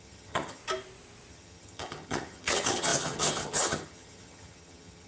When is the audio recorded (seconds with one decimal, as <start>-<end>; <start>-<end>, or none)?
0.6-1.3